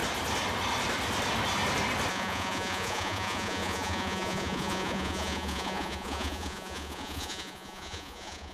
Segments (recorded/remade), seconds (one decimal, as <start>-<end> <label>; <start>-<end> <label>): 0.0-2.1 recorded; 2.1-8.5 remade